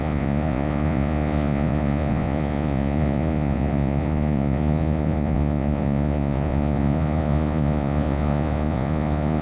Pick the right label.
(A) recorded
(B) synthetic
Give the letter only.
B